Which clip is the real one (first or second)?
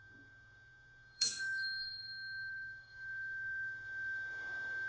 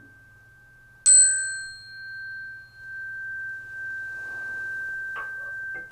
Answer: second